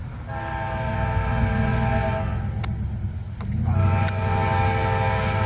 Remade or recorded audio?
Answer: recorded